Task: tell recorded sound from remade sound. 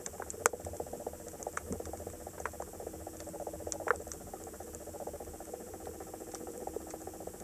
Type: recorded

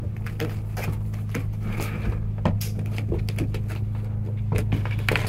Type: recorded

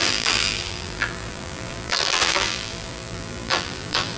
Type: remade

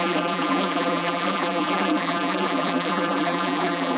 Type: remade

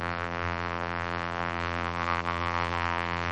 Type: remade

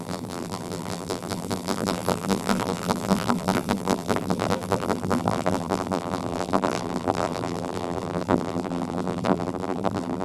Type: remade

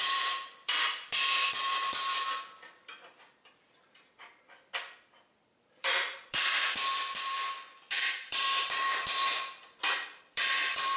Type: remade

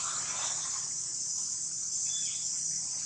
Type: recorded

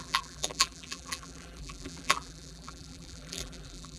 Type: remade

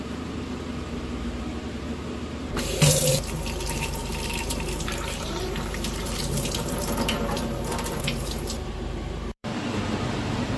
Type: remade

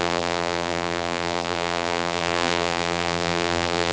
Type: remade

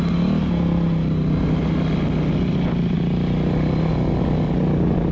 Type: recorded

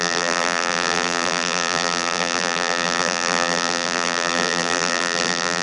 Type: remade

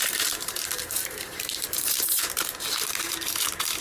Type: remade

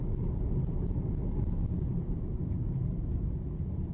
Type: recorded